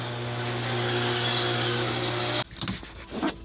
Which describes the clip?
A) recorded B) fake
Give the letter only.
A